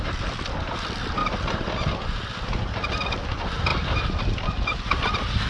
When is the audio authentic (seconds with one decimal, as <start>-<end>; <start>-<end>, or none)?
0.0-5.5